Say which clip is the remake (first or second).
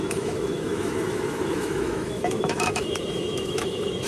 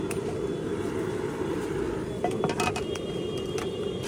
first